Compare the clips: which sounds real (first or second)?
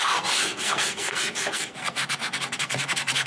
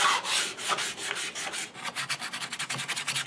second